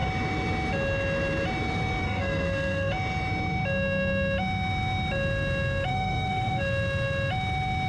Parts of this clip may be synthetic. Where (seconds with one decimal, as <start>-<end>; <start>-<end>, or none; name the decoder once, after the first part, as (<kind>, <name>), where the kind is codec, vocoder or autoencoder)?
2.0-2.9 (codec, SNAC); 5.9-6.6